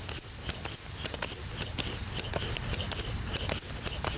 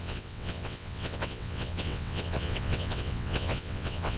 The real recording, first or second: first